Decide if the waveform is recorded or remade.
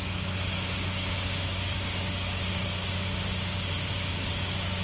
remade